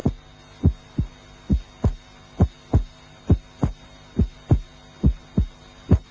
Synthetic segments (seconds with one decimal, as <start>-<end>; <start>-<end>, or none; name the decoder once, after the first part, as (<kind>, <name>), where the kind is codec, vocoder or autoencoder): none